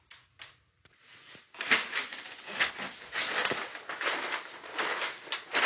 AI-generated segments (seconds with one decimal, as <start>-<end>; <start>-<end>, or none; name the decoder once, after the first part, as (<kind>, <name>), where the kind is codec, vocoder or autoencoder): 1.8-2.7 (vocoder, Vocos)